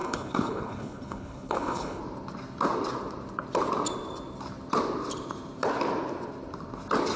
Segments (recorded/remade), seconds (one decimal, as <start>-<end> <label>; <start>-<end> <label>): 0.0-2.0 remade; 2.0-7.2 recorded